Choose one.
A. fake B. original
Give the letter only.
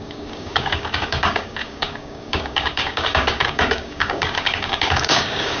A